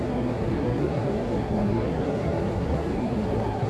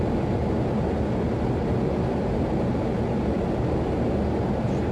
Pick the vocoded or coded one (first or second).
first